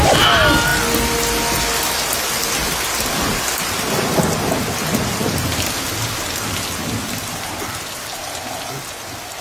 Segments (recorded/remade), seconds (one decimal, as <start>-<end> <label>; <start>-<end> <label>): 0.0-9.4 recorded